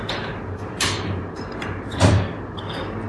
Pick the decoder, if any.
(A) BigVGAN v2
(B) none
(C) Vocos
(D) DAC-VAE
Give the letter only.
A